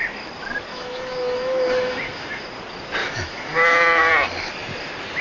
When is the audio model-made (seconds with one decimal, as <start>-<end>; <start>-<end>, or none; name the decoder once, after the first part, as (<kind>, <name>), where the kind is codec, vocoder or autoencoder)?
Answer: 0.7-2.4 (autoencoder, DAC-VAE); 3.0-4.1